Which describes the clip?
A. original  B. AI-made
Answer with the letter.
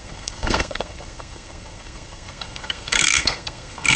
B